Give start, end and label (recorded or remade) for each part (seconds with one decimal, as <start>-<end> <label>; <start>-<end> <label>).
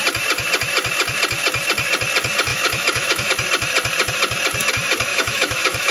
0.0-2.5 recorded; 2.5-3.3 remade; 3.3-5.1 recorded; 5.1-5.9 remade